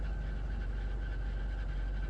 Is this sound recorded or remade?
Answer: recorded